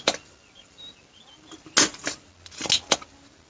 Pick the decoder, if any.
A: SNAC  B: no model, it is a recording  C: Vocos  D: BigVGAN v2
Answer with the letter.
B